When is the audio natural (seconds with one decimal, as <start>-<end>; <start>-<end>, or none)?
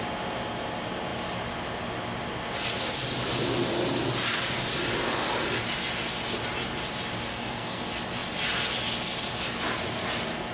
0.0-7.3; 7.8-10.5